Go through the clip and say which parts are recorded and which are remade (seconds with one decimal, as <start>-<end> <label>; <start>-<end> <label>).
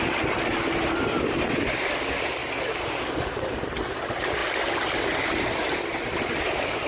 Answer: 0.0-6.9 recorded